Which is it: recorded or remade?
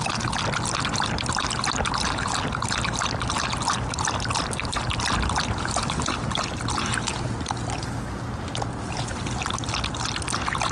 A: recorded